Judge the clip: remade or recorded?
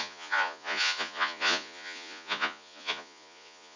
remade